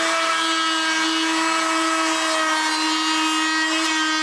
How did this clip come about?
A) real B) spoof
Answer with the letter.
A